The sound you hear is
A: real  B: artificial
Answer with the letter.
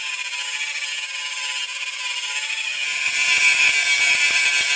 A